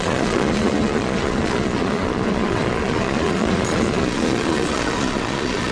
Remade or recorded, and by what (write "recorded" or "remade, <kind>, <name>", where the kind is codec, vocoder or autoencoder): remade, vocoder, Vocos